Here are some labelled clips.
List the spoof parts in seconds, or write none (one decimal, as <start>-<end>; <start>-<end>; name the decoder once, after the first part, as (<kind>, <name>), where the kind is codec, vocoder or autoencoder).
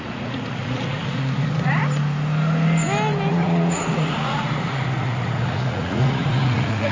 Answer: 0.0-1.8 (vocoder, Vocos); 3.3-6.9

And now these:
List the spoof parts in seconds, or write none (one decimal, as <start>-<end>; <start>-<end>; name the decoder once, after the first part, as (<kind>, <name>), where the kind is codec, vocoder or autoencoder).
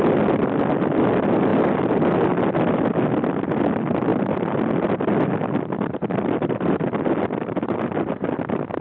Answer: none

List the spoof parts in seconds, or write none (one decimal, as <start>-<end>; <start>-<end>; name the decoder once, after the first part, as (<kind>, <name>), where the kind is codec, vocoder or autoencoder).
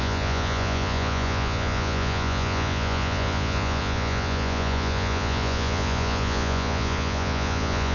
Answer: 0.0-7.9 (vocoder, Vocos)